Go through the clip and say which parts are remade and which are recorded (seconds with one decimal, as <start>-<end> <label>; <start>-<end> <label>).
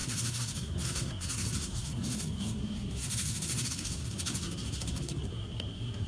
0.0-6.1 remade